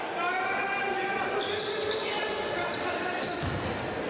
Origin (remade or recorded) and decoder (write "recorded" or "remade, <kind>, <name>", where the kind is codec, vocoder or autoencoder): recorded